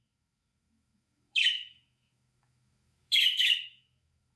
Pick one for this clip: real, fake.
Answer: fake